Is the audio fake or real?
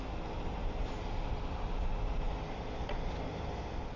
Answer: real